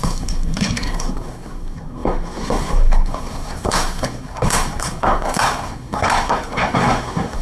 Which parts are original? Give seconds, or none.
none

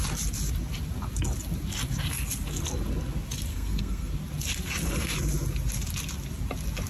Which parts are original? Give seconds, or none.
0.0-3.5; 4.1-6.9

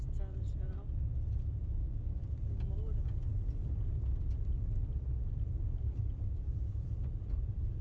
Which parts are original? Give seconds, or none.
0.0-7.8

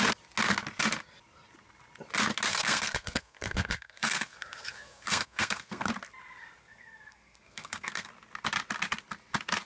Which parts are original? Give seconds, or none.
0.0-2.5; 5.9-6.6; 8.1-9.7

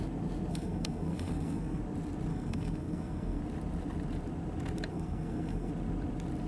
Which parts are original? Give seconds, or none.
0.0-0.5; 1.8-2.3; 3.4-4.9; 5.7-6.5

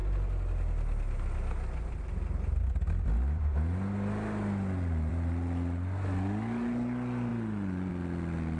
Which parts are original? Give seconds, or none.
0.0-8.6

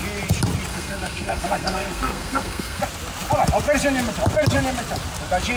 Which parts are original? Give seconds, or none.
0.0-0.7; 2.8-5.6